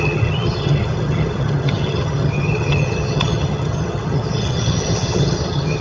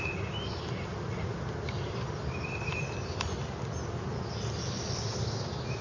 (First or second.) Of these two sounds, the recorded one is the second